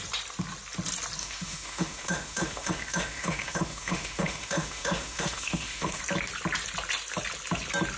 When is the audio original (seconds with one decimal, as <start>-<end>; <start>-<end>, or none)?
0.0-1.2; 6.0-8.0